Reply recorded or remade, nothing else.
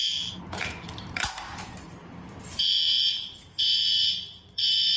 remade